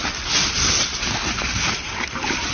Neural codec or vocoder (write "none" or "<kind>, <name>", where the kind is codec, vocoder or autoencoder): none